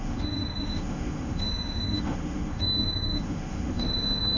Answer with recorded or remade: remade